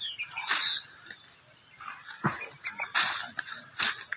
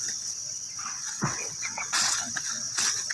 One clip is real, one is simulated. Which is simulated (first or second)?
second